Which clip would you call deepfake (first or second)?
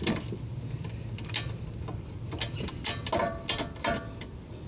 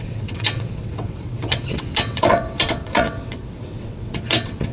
second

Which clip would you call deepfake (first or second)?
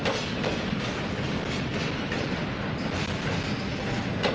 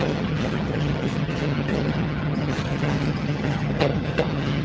second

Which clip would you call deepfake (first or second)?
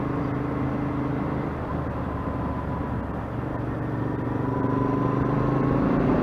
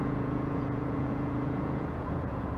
second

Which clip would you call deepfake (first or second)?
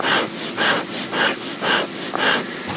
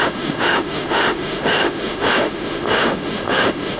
second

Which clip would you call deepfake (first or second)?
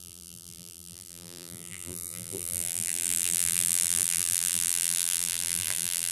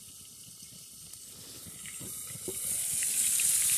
first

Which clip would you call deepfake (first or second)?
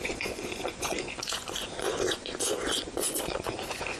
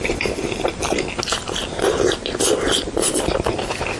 first